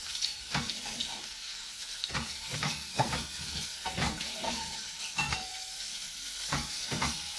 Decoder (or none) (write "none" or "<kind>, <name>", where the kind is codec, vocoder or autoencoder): codec, SNAC